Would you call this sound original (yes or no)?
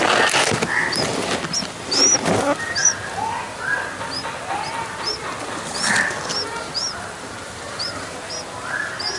yes